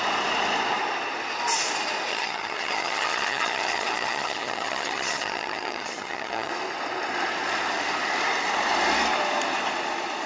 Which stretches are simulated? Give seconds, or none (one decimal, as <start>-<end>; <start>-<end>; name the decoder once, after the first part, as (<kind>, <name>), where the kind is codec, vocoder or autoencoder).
2.1-6.5 (vocoder, HiFi-GAN)